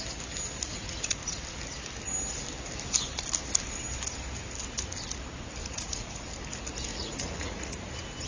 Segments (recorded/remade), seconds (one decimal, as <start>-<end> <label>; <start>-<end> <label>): 0.0-0.7 recorded; 0.7-1.3 remade; 1.3-5.6 recorded; 5.6-6.2 remade; 6.2-6.9 recorded; 6.9-7.7 remade; 7.7-8.3 recorded